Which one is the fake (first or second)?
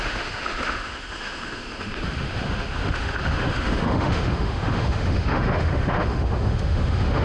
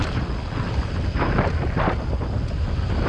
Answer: first